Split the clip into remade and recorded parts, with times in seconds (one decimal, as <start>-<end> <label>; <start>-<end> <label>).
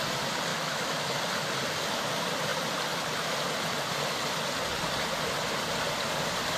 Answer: 0.0-0.5 recorded; 0.5-1.2 remade; 1.2-6.6 recorded